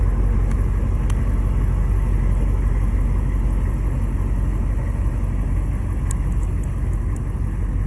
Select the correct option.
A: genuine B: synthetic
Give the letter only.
A